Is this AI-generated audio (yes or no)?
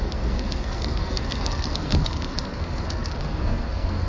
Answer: yes